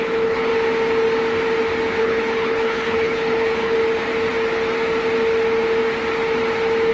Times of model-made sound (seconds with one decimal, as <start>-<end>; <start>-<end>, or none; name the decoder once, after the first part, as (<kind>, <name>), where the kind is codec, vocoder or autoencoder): 0.0-0.5 (codec, HILCodec); 2.0-3.8